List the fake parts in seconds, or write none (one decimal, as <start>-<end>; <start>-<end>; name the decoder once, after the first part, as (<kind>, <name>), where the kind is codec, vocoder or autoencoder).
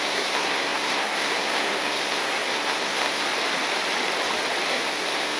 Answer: 0.0-3.3 (codec, SNAC); 4.7-5.4